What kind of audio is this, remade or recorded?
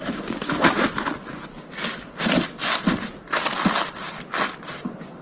recorded